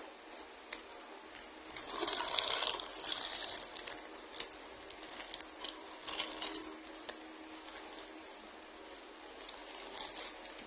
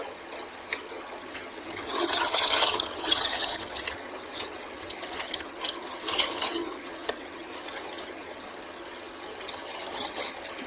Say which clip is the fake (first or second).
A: second